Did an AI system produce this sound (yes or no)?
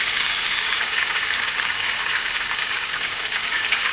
yes